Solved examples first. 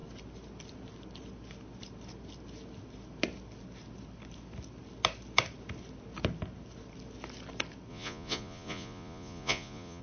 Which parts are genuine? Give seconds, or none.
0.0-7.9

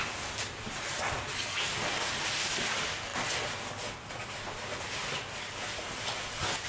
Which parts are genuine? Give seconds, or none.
0.0-6.7

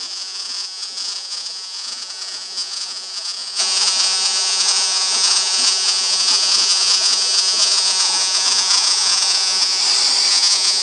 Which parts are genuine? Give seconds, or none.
9.8-10.3

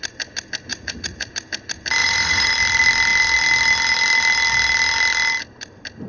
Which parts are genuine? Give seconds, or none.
0.0-0.7; 1.3-2.0; 2.5-6.1

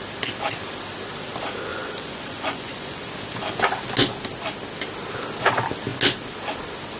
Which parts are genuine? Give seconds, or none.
0.0-1.7; 3.1-7.0